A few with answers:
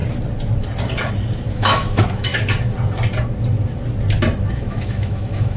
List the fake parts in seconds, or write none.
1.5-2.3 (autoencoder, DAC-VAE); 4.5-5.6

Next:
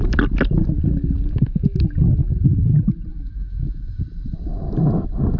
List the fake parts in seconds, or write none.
3.1-4.0 (autoencoder, DAC-VAE)